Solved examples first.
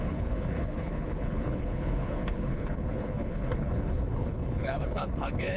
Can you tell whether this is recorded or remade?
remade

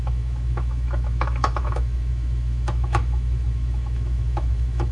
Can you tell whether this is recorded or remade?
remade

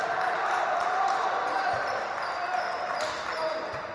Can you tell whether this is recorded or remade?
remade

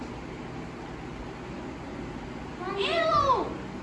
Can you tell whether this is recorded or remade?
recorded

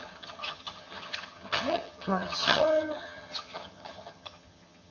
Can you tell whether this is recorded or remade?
remade